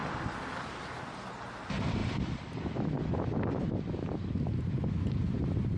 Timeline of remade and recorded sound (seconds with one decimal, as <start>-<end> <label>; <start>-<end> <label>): 0.0-1.0 remade; 1.0-2.0 recorded; 2.0-2.9 remade; 2.9-5.8 recorded